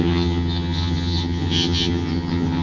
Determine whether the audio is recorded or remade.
remade